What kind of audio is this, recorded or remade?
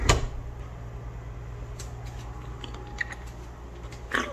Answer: recorded